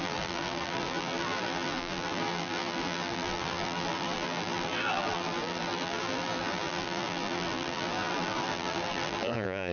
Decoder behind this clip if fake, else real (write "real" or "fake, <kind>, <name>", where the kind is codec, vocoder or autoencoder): fake, vocoder, BigVGAN v2